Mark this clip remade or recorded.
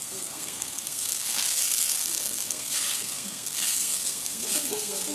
remade